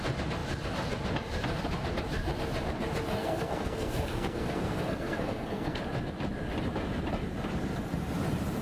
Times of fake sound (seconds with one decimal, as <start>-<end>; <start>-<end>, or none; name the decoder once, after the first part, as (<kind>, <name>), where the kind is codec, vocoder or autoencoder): 3.2-5.8 (codec, SNAC)